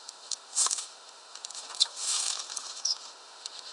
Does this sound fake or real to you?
fake